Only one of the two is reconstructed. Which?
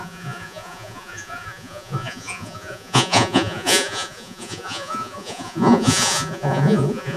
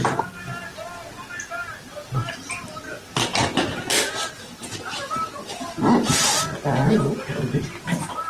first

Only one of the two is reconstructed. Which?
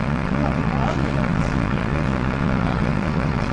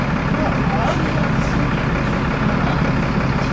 first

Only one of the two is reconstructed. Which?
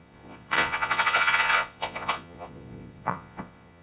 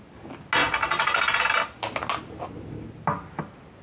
first